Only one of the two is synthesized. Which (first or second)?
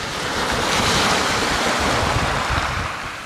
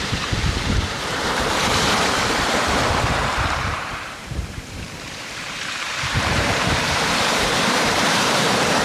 second